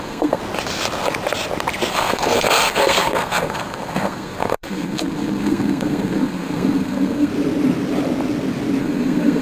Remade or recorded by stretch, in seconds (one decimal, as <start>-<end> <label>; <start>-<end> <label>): 0.0-0.4 remade; 0.4-1.9 recorded; 1.9-7.3 remade; 7.3-8.8 recorded; 8.8-9.4 remade